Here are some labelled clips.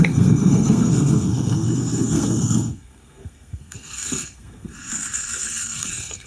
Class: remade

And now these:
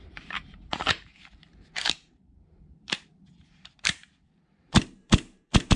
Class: remade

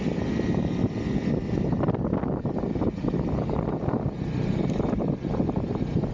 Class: recorded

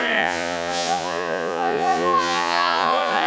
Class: remade